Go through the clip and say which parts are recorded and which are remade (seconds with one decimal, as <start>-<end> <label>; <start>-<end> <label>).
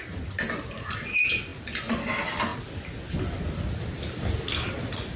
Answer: 0.0-5.2 recorded